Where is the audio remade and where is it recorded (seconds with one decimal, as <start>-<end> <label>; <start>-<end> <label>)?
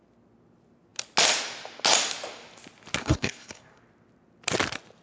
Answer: 0.0-3.0 recorded; 3.0-3.8 remade; 3.8-5.0 recorded